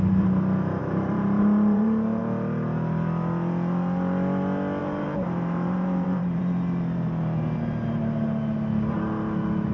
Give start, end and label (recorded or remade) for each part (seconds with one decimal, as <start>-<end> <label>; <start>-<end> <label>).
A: 0.0-0.8 recorded; 0.8-2.2 remade; 2.2-4.8 recorded; 4.8-6.4 remade; 6.4-9.7 recorded